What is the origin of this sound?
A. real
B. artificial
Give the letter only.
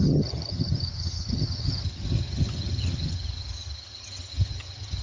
B